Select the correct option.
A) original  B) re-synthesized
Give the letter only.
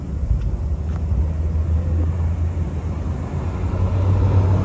A